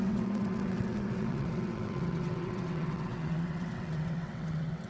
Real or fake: fake